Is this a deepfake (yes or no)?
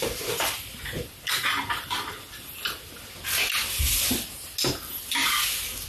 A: no